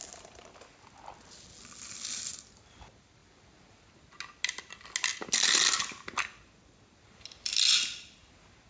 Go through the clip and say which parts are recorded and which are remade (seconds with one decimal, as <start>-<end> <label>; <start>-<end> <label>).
0.0-8.7 recorded